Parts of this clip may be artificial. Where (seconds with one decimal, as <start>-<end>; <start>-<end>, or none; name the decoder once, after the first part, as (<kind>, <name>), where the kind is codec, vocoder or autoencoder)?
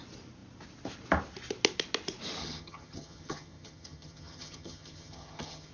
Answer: 2.4-5.7 (vocoder, HiFi-GAN)